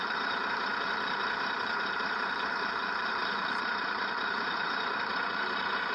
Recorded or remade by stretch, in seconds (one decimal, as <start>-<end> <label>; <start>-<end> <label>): 0.0-5.9 remade